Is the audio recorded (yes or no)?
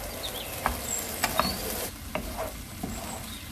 yes